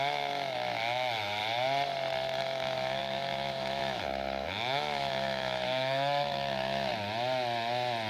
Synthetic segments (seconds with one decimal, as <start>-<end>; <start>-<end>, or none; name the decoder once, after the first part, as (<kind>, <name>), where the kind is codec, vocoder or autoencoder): 0.0-1.4 (autoencoder, DAC-VAE); 2.4-6.9